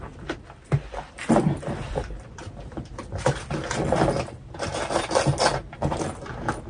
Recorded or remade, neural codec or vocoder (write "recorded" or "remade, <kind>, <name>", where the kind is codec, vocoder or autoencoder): recorded